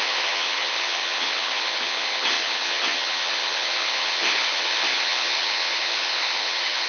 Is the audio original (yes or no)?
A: no